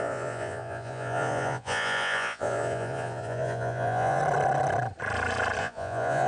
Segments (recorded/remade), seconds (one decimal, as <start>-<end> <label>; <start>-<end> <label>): 0.0-4.2 remade; 4.2-5.6 recorded; 5.6-6.3 remade